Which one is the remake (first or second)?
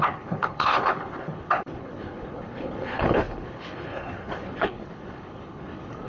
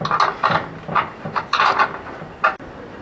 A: first